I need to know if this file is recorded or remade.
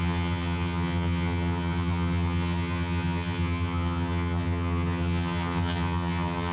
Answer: remade